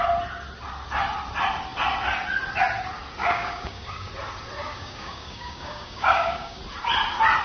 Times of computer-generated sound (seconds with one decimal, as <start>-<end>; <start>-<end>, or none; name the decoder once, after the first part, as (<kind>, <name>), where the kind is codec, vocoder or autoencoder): 3.2-4.1 (codec, DAC); 4.6-6.6

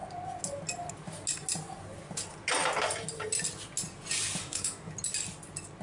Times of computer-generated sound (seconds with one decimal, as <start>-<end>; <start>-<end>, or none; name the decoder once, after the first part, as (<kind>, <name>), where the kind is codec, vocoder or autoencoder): 4.4-4.9 (autoencoder, DAC-VAE)